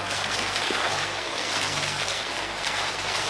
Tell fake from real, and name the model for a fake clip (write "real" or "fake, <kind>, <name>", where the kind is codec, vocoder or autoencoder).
fake, codec, SNAC